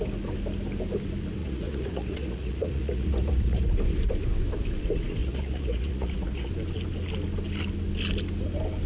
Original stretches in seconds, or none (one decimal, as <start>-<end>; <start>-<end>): 0.0-1.4; 3.6-5.2; 6.5-8.9